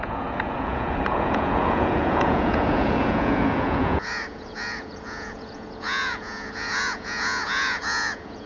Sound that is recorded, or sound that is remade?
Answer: remade